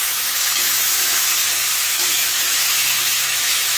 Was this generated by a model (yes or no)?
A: yes